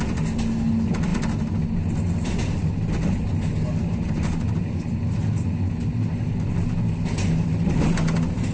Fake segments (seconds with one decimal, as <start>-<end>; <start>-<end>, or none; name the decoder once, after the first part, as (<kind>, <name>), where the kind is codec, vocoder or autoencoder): none